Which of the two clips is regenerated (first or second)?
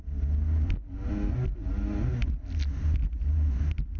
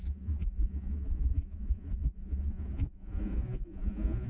second